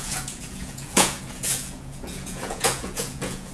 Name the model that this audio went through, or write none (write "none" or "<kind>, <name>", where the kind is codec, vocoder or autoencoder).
vocoder, Vocos